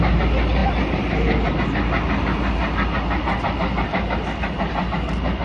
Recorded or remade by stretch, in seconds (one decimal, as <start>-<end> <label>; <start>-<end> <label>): 0.0-5.4 recorded